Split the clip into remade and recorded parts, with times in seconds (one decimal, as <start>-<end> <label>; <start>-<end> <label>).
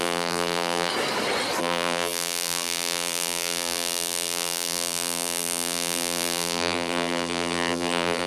0.0-0.9 remade; 0.9-1.6 recorded; 1.6-8.3 remade